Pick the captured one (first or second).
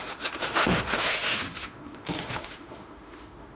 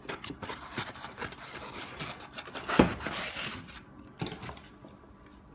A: second